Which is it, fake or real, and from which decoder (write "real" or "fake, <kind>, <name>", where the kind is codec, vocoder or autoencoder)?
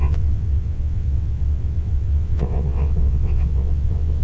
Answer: fake, vocoder, WaveNeXt